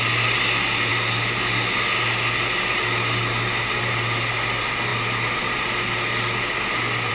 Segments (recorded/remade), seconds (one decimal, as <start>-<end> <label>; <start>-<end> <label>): 0.0-7.1 recorded